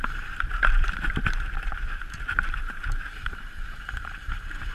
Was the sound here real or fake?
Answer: fake